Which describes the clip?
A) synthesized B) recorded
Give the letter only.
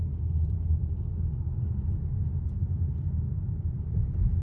B